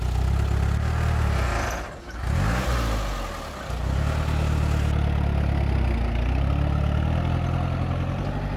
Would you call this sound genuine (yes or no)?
yes